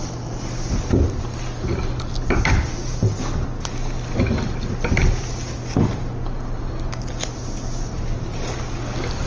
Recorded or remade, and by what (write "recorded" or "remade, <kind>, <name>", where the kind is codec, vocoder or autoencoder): recorded